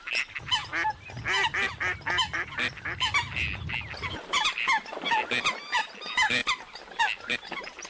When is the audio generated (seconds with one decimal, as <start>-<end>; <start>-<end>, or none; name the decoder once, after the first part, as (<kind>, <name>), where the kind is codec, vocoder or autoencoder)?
none